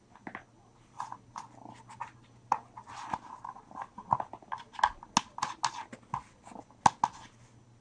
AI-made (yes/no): no